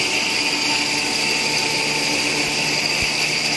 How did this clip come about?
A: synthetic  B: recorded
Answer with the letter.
B